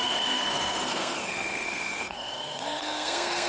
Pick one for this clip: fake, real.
fake